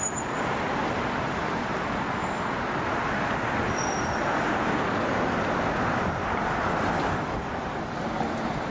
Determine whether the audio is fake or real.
real